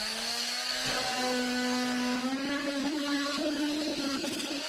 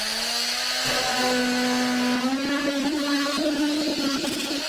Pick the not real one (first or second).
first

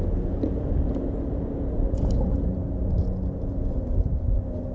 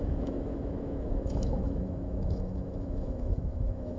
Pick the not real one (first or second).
second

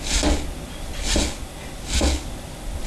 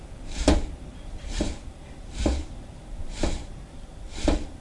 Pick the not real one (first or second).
second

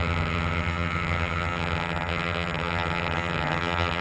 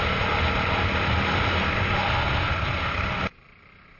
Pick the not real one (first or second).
first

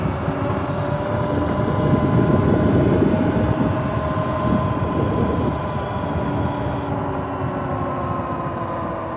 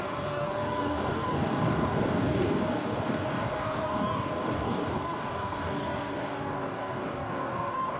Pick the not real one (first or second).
second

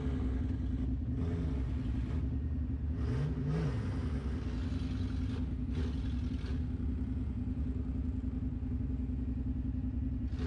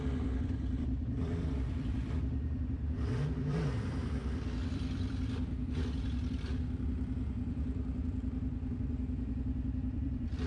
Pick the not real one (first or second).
second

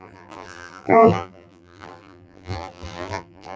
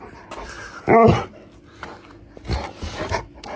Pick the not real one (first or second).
first